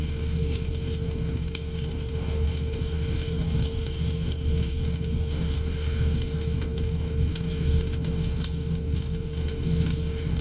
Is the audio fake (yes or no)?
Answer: yes